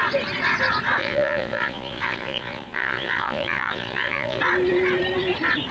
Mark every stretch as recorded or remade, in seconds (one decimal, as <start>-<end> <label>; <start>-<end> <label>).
0.0-1.0 recorded; 1.0-4.4 remade; 4.4-5.7 recorded